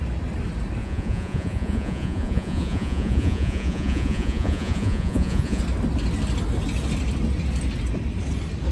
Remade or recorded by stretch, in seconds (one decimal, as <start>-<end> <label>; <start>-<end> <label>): 0.0-0.8 recorded; 0.8-5.6 remade; 5.6-8.7 recorded

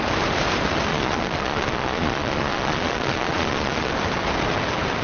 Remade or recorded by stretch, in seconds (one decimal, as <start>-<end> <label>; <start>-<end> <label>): 0.0-0.9 recorded; 0.9-3.9 remade; 3.9-5.0 recorded

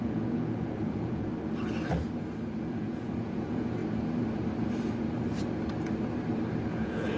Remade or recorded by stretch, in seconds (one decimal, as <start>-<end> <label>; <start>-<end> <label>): 0.0-1.3 remade; 1.3-2.6 recorded; 2.6-3.8 remade; 3.8-6.7 recorded; 6.7-7.2 remade

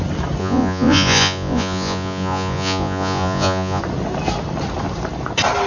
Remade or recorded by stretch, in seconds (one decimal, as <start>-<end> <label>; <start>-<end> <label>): 0.0-0.4 recorded; 0.4-3.8 remade; 3.8-5.7 recorded